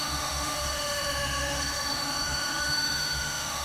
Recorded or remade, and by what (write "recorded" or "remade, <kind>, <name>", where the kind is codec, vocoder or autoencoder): remade, autoencoder, DAC-VAE